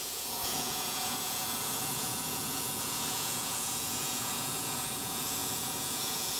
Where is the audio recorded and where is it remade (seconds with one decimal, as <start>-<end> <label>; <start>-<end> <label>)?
0.0-6.4 remade

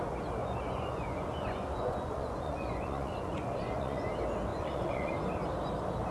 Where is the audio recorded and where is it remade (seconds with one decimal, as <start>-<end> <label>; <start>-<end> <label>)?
0.0-0.4 recorded; 0.4-4.1 remade; 4.1-4.5 recorded; 4.5-5.1 remade; 5.1-6.1 recorded